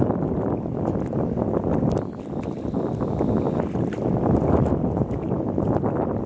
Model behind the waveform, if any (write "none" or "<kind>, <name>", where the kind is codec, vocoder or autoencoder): none